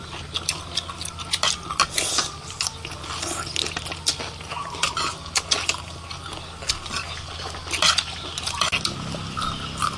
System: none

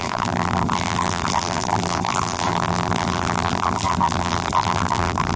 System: vocoder, BigVGAN v2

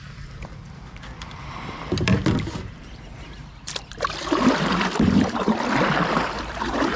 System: vocoder, BigVGAN v2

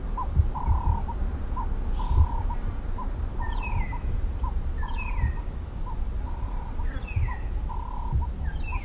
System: none